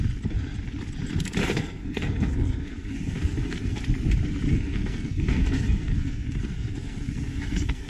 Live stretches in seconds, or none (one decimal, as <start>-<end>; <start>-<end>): 0.0-1.4; 3.8-4.5